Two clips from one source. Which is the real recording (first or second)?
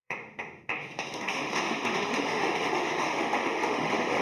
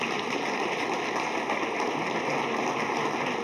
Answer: second